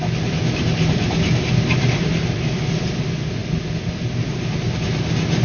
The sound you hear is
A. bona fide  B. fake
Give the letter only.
A